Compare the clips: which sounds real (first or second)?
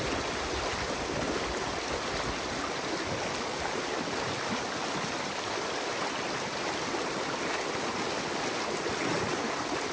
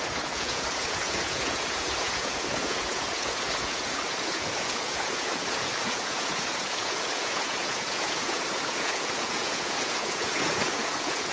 first